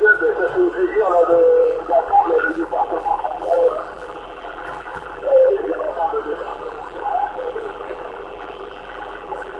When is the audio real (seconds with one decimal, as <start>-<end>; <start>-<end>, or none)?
0.0-1.6; 5.9-6.5

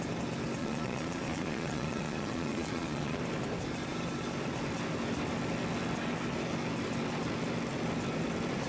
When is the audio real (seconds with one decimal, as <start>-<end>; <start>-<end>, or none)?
0.0-0.6; 3.2-8.7

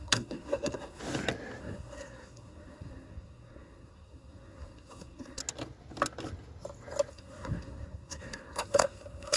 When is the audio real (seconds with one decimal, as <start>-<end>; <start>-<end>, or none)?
1.0-1.6; 5.4-7.1

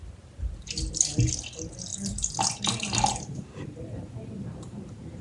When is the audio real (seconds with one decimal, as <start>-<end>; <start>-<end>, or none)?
0.0-1.9

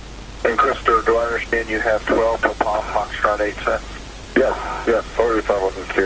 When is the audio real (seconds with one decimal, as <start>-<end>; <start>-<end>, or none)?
0.0-6.1